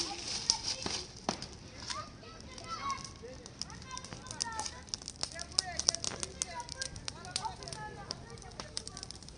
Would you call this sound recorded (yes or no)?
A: yes